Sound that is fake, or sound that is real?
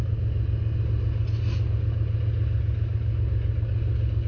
real